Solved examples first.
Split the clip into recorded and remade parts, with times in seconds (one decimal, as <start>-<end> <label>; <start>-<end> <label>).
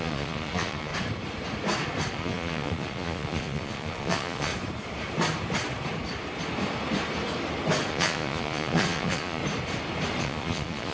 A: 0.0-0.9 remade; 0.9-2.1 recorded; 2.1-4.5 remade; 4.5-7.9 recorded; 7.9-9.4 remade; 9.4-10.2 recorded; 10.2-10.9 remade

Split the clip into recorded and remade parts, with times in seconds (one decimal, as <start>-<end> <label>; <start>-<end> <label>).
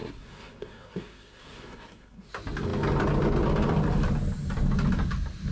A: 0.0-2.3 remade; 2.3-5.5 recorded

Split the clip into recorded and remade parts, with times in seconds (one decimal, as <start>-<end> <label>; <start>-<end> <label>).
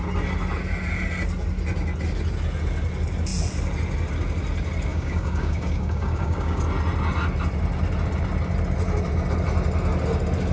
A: 0.0-4.9 recorded; 4.9-6.6 remade; 6.6-10.5 recorded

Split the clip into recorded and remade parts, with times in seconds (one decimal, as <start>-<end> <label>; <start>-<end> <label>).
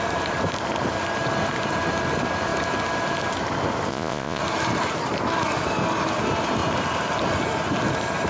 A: 0.0-3.9 recorded; 3.9-4.4 remade; 4.4-8.3 recorded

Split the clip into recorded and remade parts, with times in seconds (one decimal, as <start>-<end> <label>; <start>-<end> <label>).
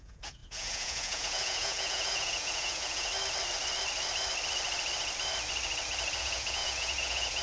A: 0.0-3.1 remade; 3.1-6.2 recorded; 6.2-7.4 remade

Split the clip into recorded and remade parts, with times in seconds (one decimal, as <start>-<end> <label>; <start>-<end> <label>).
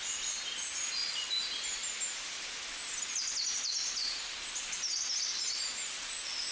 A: 0.0-1.0 recorded; 1.0-3.0 remade; 3.0-4.0 recorded; 4.0-5.0 remade; 5.0-5.4 recorded; 5.4-6.1 remade; 6.1-6.5 recorded